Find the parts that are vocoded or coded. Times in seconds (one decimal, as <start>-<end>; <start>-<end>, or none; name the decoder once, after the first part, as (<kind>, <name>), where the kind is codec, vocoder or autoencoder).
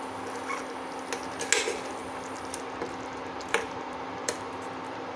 2.0-5.2 (vocoder, BigVGAN v2)